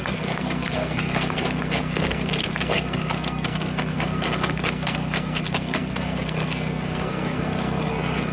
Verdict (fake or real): fake